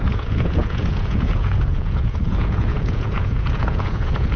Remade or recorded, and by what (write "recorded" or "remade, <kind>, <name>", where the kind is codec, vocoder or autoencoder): remade, vocoder, Vocos